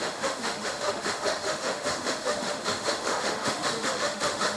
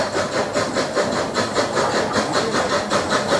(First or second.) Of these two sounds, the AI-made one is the first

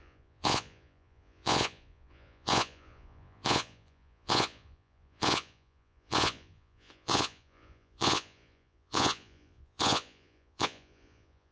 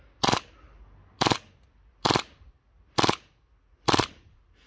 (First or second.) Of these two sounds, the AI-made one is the first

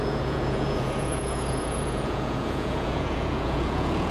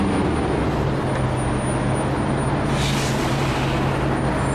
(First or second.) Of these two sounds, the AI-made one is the first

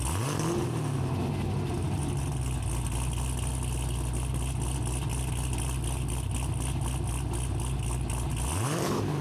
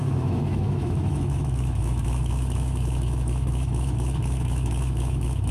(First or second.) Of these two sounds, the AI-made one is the second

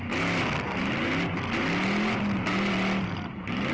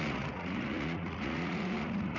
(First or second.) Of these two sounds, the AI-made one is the second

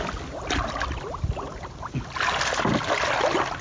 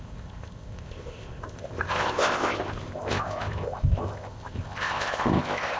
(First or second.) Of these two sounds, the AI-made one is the second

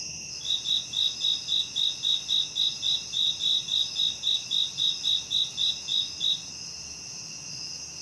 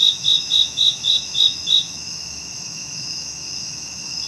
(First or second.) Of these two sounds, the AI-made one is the second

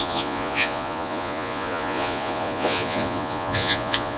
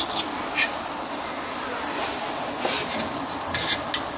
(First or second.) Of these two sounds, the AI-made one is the first